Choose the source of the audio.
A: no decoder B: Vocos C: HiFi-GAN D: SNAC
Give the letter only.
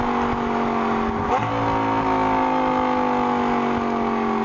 A